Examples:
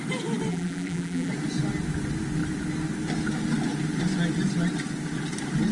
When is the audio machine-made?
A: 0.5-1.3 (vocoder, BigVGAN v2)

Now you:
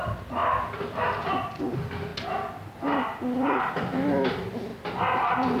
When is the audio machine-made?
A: none

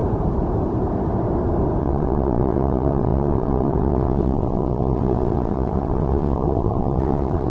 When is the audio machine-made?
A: 1.8-7.5 (vocoder, WaveNeXt)

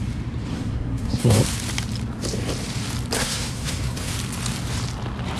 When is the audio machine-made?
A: 0.5-1.4 (codec, SNAC); 3.2-4.1